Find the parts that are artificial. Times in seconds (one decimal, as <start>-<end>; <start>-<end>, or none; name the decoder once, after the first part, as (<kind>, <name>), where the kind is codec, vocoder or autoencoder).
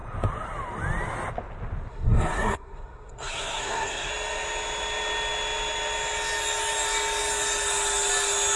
1.9-4.1 (codec, SNAC)